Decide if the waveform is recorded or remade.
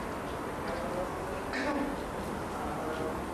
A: recorded